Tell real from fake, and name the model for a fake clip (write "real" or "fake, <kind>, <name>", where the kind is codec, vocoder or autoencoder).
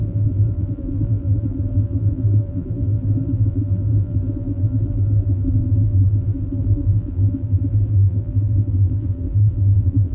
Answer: fake, vocoder, BigVGAN v2